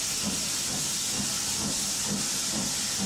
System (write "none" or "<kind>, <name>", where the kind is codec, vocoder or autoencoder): none